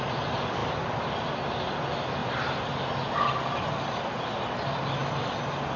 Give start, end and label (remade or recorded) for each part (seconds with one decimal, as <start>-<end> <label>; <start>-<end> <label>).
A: 0.0-2.2 recorded; 2.2-2.7 remade; 2.7-5.8 recorded